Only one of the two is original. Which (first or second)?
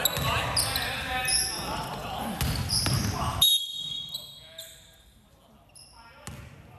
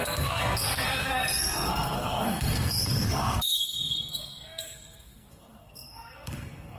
first